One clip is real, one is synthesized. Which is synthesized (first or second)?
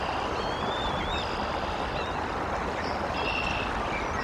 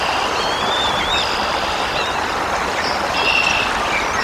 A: second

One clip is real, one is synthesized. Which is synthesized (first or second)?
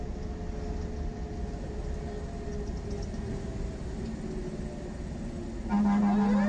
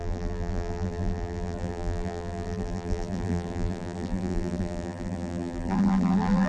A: second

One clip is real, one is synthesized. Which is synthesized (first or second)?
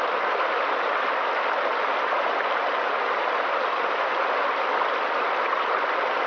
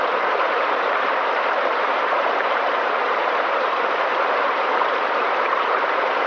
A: second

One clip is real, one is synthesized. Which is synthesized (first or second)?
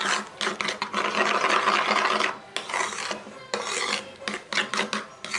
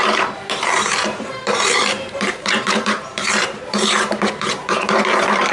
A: second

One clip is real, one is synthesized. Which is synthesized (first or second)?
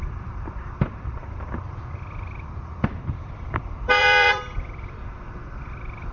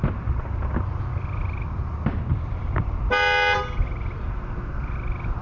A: first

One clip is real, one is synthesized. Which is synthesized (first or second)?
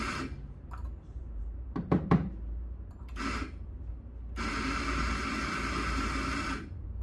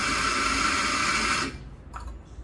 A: first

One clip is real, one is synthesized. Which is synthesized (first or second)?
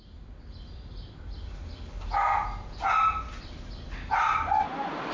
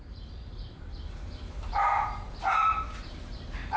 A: second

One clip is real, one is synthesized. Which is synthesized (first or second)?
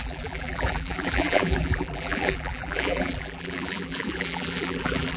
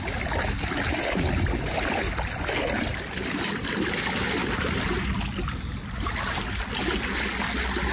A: first